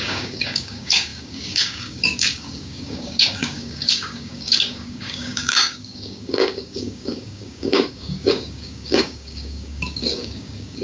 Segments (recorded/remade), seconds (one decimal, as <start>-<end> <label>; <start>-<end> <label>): 0.0-10.8 remade